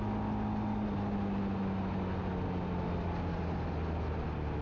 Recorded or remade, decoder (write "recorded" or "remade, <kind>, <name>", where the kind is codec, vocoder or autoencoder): recorded